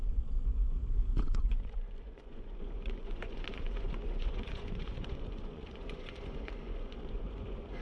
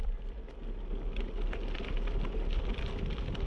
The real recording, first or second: second